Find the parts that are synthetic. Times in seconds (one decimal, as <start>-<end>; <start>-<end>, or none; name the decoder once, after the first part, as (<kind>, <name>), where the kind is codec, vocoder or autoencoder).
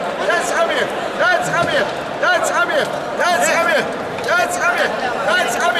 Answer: 0.0-1.3 (vocoder, BigVGAN v2); 4.8-5.8